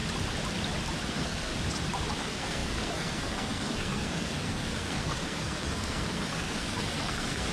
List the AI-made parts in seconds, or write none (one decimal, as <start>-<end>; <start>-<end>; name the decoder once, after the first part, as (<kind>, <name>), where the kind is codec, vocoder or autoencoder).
1.1-1.5 (codec, SNAC); 2.2-7.5